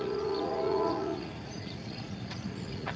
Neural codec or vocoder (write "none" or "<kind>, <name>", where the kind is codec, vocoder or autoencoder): vocoder, Vocos